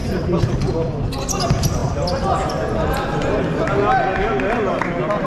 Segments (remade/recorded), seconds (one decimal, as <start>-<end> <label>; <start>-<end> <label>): 0.0-5.3 recorded